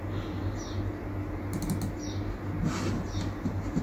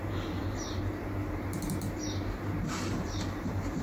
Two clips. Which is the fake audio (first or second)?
second